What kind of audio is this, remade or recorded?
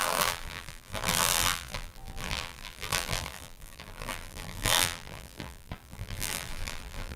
remade